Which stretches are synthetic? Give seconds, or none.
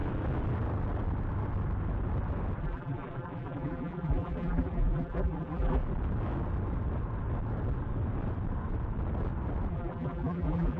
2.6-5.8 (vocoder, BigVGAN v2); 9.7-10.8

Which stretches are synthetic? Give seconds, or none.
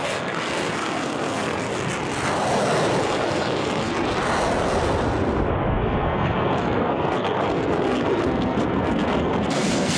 0.0-1.7 (codec, SNAC); 3.0-3.9; 5.7-10.0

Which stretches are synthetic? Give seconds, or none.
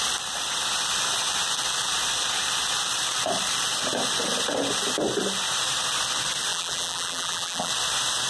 6.5-7.7 (vocoder, BigVGAN v2)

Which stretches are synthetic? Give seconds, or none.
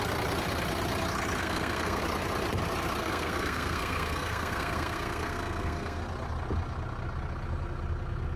1.4-2.0 (codec, SNAC); 3.0-6.0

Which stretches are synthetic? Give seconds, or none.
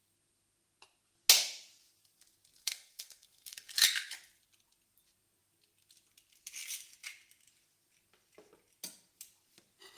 2.6-3.7 (codec, SNAC)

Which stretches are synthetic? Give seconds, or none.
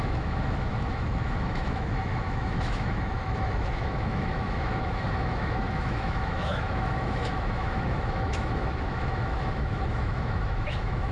0.0-11.1 (autoencoder, DAC-VAE)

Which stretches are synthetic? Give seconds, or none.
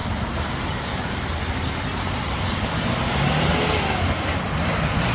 none